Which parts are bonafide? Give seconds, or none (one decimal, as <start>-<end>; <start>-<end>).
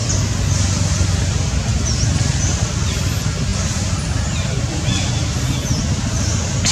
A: 0.0-6.7